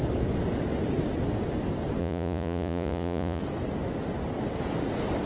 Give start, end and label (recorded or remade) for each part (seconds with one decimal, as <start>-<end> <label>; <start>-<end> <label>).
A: 0.0-2.0 recorded; 2.0-3.4 remade; 3.4-5.3 recorded